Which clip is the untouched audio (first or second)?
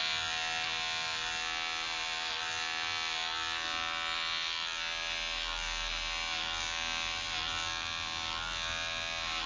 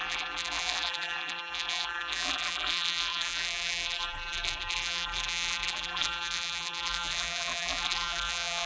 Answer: first